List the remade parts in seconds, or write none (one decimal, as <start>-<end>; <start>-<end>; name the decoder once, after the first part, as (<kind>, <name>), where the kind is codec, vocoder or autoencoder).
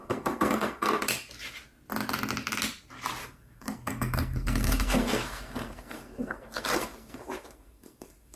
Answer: 0.0-1.0 (codec, SNAC); 3.2-8.4